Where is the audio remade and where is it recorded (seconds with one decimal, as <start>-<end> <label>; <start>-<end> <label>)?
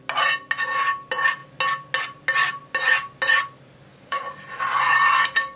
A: 0.0-3.9 recorded; 3.9-4.4 remade; 4.4-5.6 recorded